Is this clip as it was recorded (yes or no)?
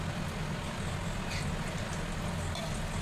yes